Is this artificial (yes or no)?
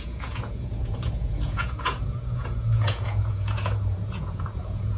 yes